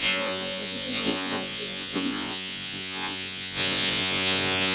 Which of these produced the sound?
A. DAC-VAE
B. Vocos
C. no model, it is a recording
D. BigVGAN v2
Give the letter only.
B